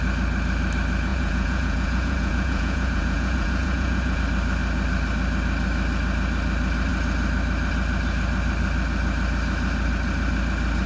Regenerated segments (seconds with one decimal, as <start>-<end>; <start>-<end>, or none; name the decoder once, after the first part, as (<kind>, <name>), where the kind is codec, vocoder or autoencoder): 1.1-4.2 (vocoder, Vocos)